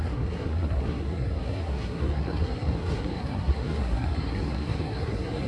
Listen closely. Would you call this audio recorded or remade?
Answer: remade